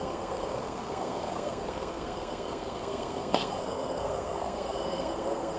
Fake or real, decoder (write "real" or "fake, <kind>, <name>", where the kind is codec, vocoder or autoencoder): fake, codec, SNAC